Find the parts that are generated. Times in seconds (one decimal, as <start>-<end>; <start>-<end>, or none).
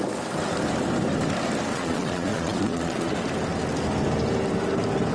1.7-3.1